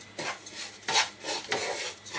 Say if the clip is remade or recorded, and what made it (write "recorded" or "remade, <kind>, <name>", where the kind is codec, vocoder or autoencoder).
recorded